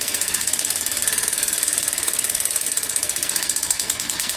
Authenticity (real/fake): fake